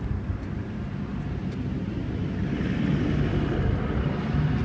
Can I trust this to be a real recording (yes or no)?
yes